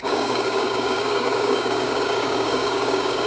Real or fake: fake